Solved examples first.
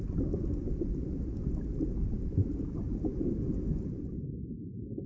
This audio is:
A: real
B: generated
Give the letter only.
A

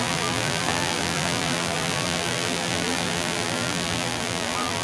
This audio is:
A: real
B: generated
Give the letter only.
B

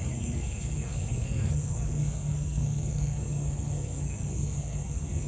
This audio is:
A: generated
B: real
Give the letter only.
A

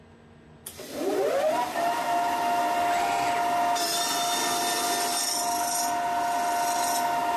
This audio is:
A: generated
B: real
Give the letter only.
B